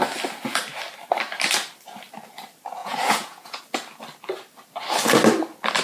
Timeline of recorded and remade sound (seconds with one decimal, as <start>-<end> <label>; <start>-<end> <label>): 0.0-2.8 recorded; 2.8-3.6 remade; 3.6-5.8 recorded